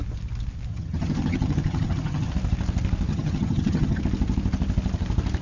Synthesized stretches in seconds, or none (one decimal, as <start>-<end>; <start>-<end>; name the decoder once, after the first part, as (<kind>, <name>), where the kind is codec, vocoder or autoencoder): 0.7-2.3 (vocoder, HiFi-GAN); 3.1-4.0

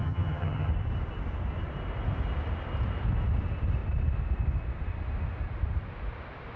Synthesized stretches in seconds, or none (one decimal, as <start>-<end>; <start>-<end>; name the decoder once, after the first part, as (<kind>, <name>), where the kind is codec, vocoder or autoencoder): 0.0-0.7 (vocoder, HiFi-GAN)

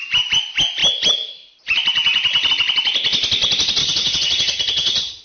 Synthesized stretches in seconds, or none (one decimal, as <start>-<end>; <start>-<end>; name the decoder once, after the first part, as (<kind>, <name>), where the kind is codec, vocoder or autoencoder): 3.8-5.2 (vocoder, HiFi-GAN)

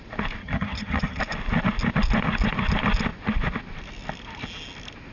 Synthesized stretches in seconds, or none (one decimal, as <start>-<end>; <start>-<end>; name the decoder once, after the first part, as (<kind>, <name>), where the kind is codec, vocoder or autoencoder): 0.4-1.2 (vocoder, HiFi-GAN)

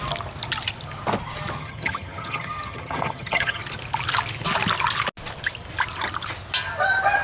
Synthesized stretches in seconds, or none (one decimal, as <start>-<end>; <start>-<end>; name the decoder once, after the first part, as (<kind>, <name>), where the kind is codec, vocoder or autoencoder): 1.6-3.6 (vocoder, HiFi-GAN)

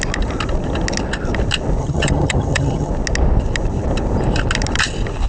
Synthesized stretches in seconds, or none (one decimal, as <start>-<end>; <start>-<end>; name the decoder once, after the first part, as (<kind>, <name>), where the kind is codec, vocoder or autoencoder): 1.8-2.9 (vocoder, HiFi-GAN)

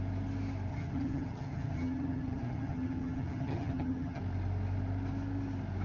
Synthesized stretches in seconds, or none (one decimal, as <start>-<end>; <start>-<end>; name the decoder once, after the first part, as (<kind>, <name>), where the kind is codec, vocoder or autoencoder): 0.7-4.2 (vocoder, HiFi-GAN)

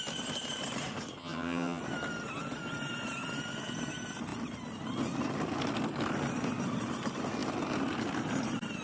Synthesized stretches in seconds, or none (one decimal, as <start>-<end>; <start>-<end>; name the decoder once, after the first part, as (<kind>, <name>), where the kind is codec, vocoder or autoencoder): 1.2-1.8 (vocoder, HiFi-GAN)